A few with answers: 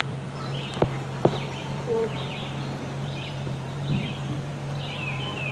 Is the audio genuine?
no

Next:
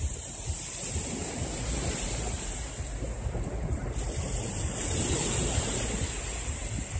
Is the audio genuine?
no